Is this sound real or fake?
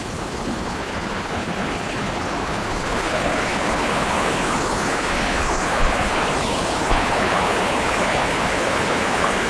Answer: fake